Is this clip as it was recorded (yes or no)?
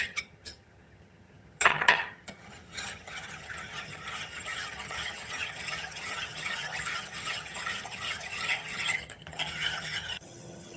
no